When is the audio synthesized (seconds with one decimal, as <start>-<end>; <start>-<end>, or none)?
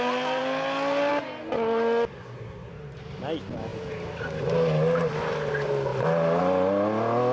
2.1-2.7